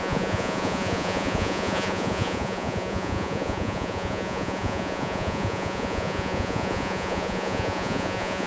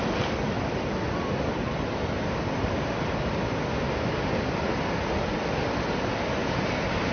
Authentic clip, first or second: second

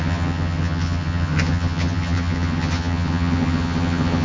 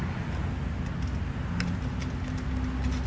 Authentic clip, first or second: second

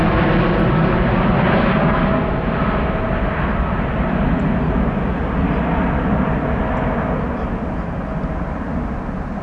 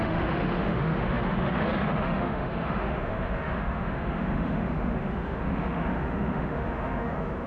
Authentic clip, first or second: first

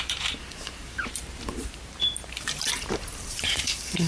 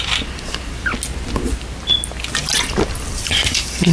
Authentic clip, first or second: second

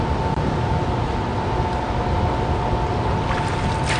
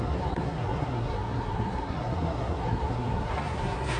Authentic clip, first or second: first